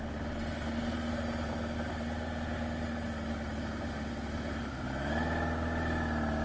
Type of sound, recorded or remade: recorded